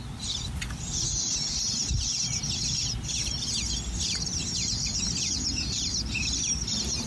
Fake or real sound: fake